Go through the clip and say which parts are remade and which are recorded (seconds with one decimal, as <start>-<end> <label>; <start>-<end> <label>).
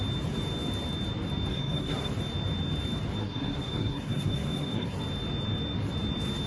0.0-1.5 recorded; 1.5-2.1 remade; 2.1-3.2 recorded; 3.2-5.0 remade; 5.0-6.5 recorded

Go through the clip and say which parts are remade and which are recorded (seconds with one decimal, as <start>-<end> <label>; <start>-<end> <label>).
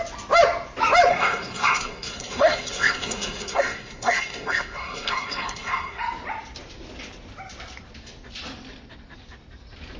0.0-1.1 recorded; 1.1-6.0 remade; 6.0-10.0 recorded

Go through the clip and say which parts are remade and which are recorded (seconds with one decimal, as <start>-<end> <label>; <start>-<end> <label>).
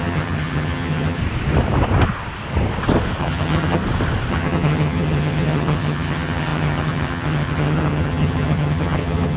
0.0-1.2 remade; 1.2-3.2 recorded; 3.2-3.8 remade; 3.8-4.3 recorded; 4.3-9.4 remade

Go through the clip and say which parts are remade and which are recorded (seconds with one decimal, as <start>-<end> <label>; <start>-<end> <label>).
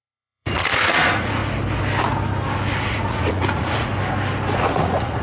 0.0-1.4 remade; 1.4-2.8 recorded; 2.8-3.9 remade; 3.9-4.5 recorded; 4.5-5.2 remade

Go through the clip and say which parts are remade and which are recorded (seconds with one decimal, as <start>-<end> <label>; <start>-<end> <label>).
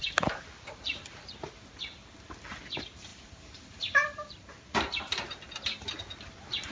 0.0-3.1 recorded; 3.1-4.5 remade; 4.5-6.7 recorded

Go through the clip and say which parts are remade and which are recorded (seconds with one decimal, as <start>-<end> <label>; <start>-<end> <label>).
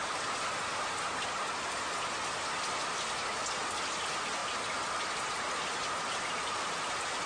0.0-7.3 recorded